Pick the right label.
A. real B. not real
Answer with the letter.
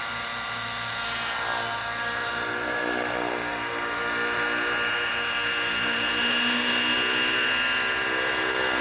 A